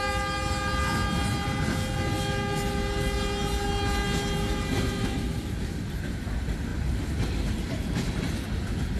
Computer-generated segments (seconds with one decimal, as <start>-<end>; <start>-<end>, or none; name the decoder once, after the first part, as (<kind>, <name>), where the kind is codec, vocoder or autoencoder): none